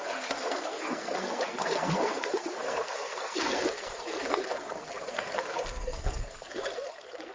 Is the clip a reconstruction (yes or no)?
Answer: yes